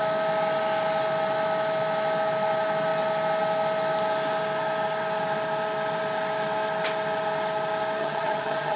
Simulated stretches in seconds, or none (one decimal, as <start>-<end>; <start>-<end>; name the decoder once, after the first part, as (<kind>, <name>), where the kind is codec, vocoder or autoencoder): 8.0-8.8 (vocoder, HiFi-GAN)